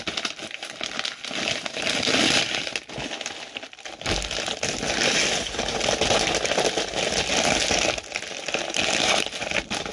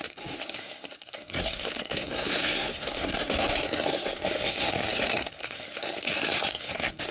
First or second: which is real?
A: first